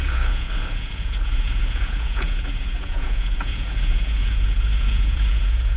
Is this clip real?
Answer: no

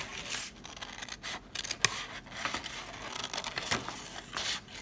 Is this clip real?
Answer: yes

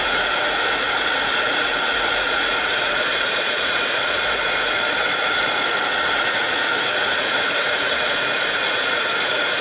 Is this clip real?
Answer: no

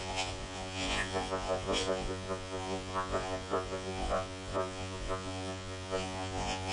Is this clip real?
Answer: no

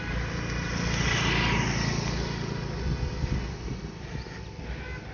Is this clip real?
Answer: yes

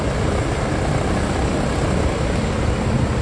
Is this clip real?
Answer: yes